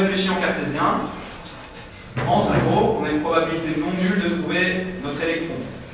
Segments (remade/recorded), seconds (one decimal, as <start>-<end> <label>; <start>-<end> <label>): 0.0-1.4 recorded; 1.4-1.9 remade; 1.9-5.9 recorded